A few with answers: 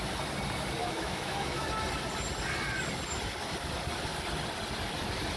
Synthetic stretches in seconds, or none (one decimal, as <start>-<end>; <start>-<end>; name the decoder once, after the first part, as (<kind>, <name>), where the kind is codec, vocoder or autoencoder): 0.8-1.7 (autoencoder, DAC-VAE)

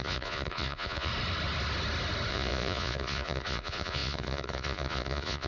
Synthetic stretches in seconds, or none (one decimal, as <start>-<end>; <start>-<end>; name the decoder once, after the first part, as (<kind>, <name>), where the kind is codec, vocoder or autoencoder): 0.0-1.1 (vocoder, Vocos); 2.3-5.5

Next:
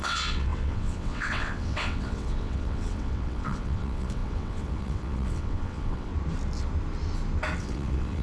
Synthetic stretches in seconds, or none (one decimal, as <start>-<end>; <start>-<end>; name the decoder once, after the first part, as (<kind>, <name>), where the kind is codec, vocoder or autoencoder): 0.0-6.1 (vocoder, WaveNeXt); 7.6-8.2

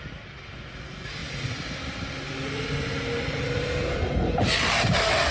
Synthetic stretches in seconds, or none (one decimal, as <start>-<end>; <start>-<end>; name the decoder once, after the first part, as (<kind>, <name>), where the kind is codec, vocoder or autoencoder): none

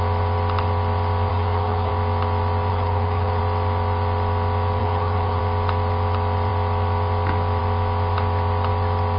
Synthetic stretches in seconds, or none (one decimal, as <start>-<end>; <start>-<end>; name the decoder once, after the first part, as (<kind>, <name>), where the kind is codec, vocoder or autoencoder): 1.3-1.9 (codec, HILCodec); 2.7-3.4; 4.8-5.4

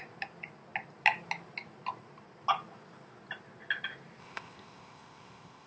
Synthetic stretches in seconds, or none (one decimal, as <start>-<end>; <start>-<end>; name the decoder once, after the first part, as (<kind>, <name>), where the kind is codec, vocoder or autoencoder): 4.2-5.7 (codec, ZipCodec)

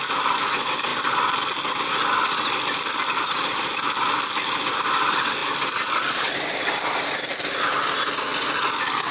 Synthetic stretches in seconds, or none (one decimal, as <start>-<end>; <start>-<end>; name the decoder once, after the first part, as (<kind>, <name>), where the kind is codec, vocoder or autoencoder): 0.0-0.9 (vocoder, BigVGAN v2); 2.4-9.1

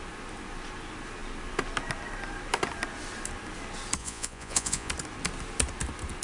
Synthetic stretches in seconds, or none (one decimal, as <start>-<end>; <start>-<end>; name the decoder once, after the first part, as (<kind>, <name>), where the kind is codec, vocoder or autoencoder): 4.0-4.9 (vocoder, Vocos)